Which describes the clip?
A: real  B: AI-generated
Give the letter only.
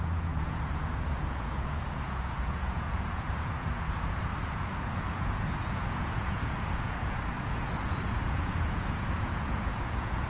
B